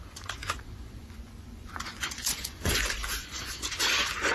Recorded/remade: remade